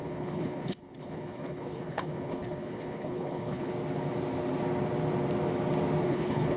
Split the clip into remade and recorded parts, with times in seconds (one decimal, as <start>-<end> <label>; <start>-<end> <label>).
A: 0.0-3.7 remade; 3.7-6.1 recorded; 6.1-6.6 remade